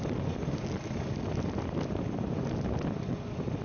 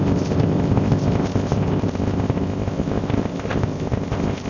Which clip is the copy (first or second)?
second